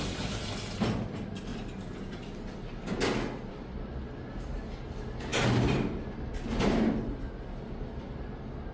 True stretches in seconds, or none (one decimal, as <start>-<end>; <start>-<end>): 0.0-8.7